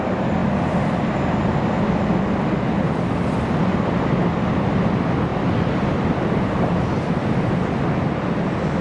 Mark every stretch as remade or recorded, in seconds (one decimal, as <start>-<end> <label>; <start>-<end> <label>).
0.0-8.8 recorded